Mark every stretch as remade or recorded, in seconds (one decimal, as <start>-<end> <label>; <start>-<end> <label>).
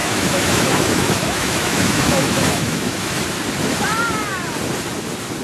0.0-3.2 remade; 3.2-5.4 recorded